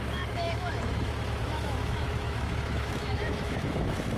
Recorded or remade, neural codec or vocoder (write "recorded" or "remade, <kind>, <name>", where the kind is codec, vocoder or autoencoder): remade, autoencoder, DAC-VAE